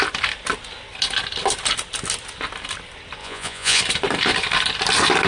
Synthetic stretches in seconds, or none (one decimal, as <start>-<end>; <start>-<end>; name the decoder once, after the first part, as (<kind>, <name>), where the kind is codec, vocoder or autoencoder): 3.2-3.8 (vocoder, Vocos)